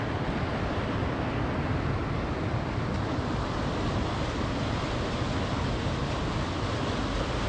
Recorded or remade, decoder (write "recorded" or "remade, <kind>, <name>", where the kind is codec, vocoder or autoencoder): recorded